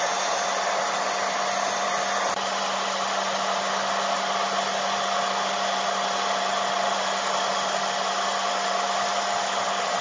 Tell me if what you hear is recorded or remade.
recorded